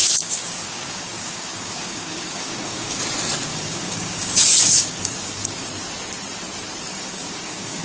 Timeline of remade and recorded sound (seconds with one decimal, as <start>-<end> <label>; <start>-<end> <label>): 0.0-3.0 remade; 3.0-3.5 recorded; 3.5-5.7 remade; 5.7-6.9 recorded; 6.9-7.8 remade